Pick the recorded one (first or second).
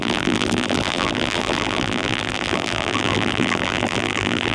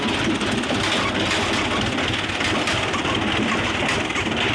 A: second